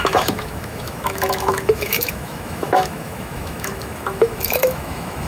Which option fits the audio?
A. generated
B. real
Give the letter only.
A